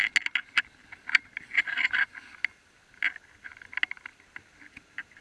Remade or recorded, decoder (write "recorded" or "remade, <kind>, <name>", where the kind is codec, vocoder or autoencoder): recorded